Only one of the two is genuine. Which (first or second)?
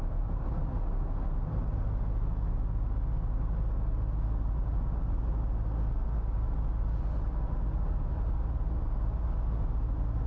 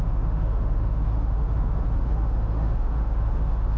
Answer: first